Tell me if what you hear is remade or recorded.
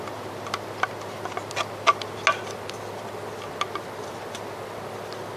recorded